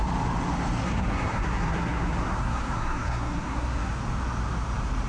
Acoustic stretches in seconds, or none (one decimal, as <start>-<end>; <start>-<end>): 0.0-0.8; 3.9-5.1